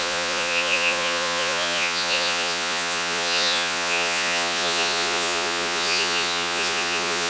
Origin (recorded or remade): remade